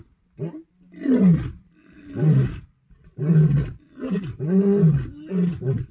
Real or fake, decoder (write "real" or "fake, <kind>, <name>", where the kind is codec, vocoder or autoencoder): real